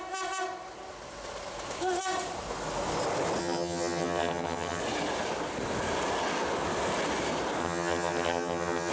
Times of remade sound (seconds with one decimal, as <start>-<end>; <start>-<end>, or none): 3.4-4.8; 7.6-8.9